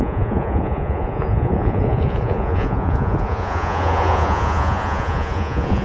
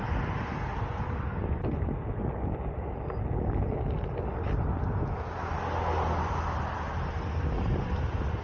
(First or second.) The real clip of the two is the second